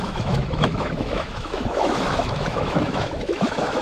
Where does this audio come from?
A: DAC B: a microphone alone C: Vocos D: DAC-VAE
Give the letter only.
D